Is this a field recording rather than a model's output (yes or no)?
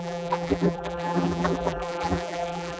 no